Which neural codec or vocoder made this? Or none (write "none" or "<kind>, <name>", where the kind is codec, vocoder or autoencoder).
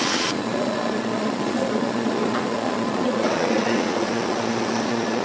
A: vocoder, Vocos